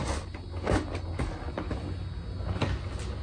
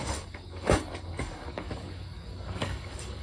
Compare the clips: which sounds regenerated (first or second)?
second